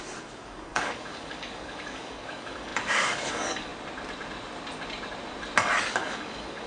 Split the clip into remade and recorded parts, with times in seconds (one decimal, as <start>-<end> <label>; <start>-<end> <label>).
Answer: 0.0-3.7 remade; 3.7-5.9 recorded; 5.9-6.7 remade